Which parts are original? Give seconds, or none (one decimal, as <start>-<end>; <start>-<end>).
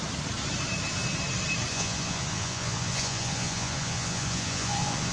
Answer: 0.0-1.7